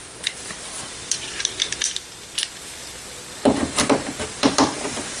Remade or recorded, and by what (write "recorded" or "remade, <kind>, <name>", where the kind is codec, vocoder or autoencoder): remade, vocoder, BigVGAN v2